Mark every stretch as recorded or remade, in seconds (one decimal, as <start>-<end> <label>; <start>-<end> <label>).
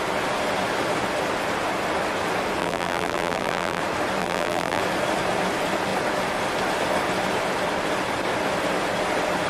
0.0-2.6 recorded; 2.6-3.8 remade; 3.8-4.2 recorded; 4.2-4.8 remade; 4.8-9.5 recorded